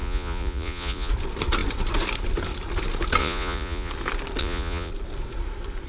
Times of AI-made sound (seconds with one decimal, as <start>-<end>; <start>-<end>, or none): 0.0-1.1; 3.2-3.9; 4.4-4.9